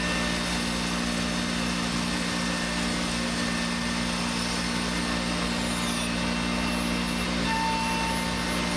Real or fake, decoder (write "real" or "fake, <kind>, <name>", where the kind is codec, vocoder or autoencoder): real